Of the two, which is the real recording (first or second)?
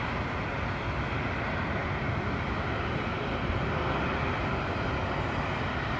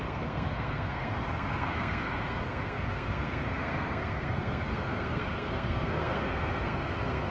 first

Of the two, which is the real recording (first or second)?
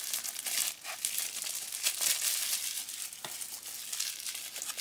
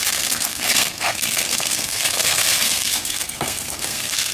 first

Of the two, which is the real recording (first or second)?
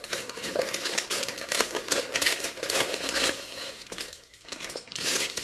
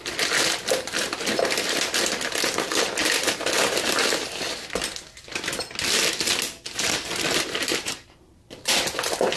second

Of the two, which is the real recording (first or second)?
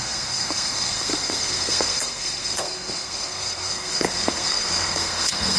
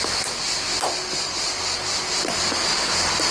second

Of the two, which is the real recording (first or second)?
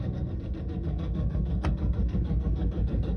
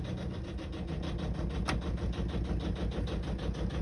second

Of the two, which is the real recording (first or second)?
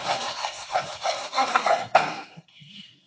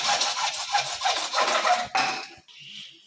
second